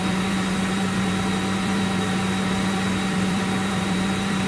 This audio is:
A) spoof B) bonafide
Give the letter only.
A